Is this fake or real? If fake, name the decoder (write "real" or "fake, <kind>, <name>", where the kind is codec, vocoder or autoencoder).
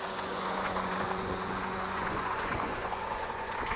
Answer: fake, vocoder, Vocos